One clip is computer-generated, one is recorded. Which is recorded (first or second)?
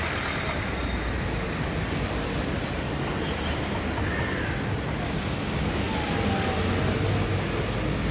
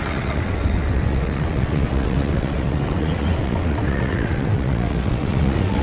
first